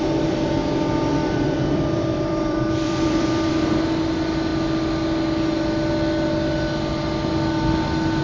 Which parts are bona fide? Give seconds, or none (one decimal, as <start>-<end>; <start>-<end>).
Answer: 0.0-1.1; 3.5-8.2